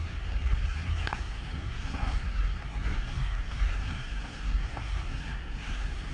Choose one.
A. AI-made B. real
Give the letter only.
A